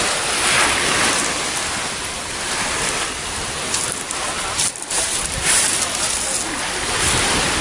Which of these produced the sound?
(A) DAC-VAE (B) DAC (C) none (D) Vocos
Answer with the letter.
C